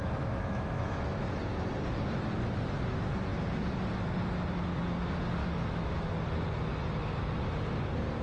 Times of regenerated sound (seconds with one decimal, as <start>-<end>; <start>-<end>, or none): 0.0-1.4; 5.4-6.1